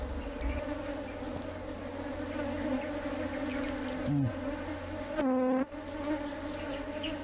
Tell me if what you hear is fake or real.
real